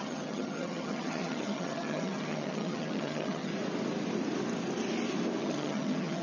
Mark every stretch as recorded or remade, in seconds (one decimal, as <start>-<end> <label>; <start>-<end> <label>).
0.0-3.5 remade; 3.5-5.4 recorded; 5.4-6.2 remade